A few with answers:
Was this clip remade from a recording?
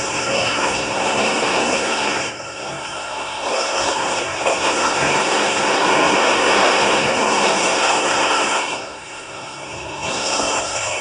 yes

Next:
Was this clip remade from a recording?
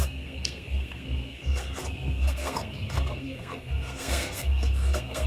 yes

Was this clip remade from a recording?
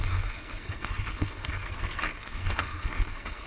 yes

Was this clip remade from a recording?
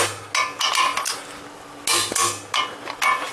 no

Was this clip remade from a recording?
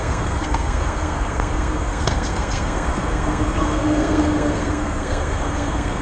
yes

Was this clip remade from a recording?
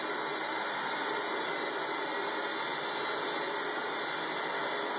no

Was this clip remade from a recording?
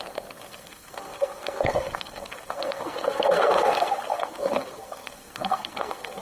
yes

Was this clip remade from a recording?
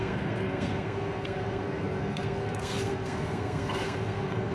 yes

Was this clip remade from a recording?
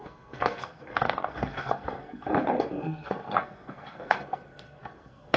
yes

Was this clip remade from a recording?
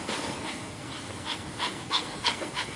yes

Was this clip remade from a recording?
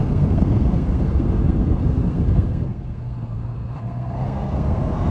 yes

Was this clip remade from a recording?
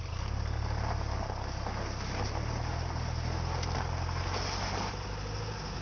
no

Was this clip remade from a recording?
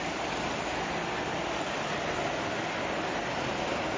no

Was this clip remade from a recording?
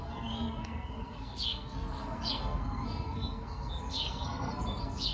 yes